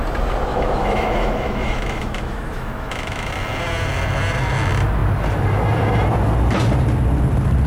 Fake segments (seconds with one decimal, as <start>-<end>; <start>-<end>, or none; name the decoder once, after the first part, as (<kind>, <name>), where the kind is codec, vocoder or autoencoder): 0.5-3.3 (autoencoder, DAC-VAE)